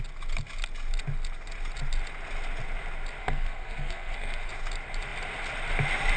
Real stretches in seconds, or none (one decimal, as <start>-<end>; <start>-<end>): 0.0-3.2; 4.5-6.2